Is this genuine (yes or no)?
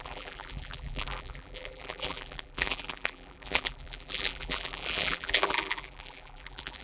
no